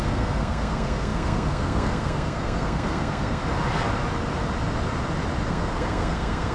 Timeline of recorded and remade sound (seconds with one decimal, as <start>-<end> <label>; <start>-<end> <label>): 0.0-3.4 remade; 3.4-5.5 recorded; 5.5-6.5 remade